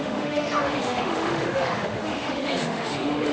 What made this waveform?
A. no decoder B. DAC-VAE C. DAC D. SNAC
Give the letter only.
B